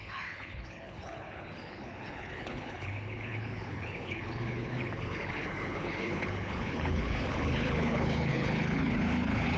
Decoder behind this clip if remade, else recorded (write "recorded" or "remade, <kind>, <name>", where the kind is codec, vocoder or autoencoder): remade, codec, HILCodec